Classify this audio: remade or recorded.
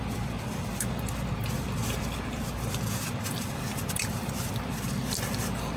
remade